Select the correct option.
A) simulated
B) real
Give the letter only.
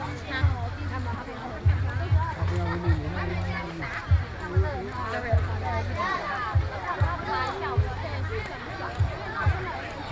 B